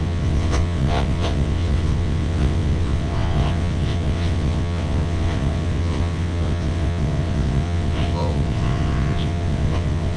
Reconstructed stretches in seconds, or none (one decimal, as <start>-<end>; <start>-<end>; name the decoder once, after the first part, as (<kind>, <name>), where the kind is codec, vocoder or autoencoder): 0.0-10.2 (vocoder, WaveNeXt)